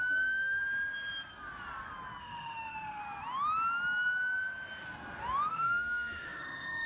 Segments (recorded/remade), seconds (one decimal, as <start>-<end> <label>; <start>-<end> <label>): 0.0-0.6 remade; 0.6-2.2 recorded; 2.2-3.0 remade; 3.0-5.5 recorded; 5.5-6.9 remade